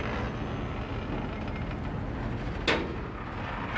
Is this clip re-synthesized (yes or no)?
no